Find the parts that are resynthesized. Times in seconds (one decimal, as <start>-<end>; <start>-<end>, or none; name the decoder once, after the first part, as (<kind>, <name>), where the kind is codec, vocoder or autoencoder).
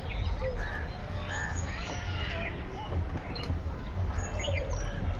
1.0-4.1 (codec, DAC)